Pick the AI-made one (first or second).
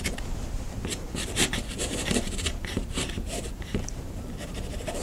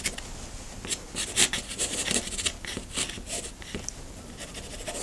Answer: first